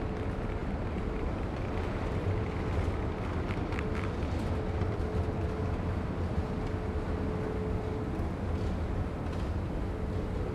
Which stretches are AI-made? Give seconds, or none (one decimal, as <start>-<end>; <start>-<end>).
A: 0.6-2.5